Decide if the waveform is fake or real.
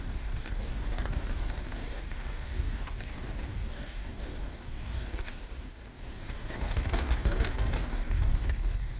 fake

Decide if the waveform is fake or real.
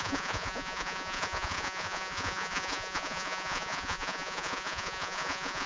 fake